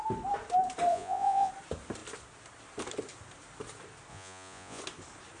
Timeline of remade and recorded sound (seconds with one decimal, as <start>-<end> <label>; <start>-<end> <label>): 0.0-0.9 recorded; 0.9-1.5 remade; 1.5-4.1 recorded; 4.1-4.8 remade; 4.8-5.4 recorded